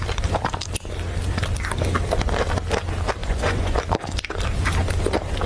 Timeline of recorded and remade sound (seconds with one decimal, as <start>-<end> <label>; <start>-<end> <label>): 0.0-3.2 recorded; 3.2-3.8 remade; 3.8-5.5 recorded